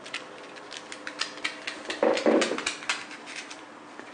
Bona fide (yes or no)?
yes